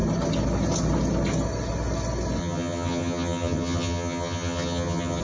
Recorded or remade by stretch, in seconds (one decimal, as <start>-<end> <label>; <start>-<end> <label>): 0.0-2.4 recorded; 2.4-5.2 remade